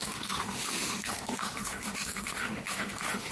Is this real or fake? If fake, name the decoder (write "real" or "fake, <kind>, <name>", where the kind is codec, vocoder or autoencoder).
fake, autoencoder, DAC-VAE